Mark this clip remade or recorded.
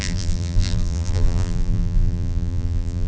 remade